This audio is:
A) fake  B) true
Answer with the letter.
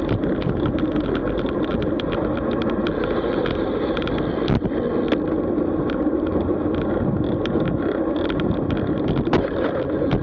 B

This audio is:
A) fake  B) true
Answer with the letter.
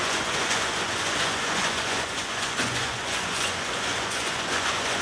A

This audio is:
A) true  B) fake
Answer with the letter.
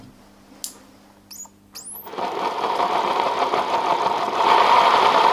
A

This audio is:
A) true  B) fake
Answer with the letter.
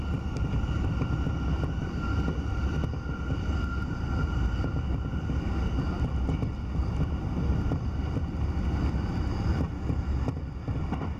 A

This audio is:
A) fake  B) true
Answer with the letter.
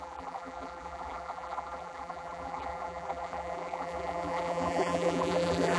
A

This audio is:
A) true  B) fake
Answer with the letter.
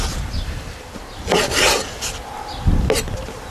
A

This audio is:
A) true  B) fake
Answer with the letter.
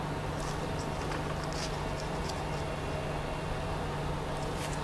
A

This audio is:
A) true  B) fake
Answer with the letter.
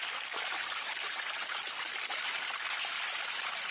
A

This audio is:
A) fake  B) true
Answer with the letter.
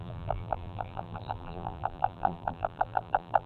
A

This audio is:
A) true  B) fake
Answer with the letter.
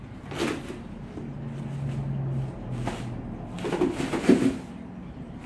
A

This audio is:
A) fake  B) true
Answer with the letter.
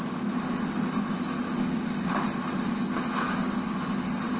B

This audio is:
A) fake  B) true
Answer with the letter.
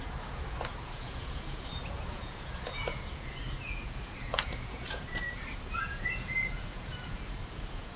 A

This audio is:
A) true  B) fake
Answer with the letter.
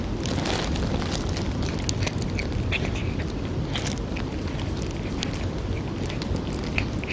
A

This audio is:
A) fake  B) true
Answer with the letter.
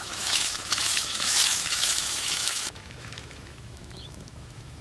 A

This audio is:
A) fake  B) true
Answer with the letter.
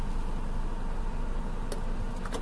B